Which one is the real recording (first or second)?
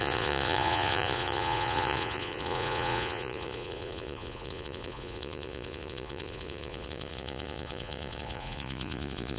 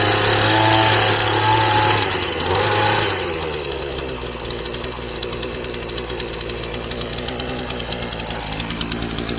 second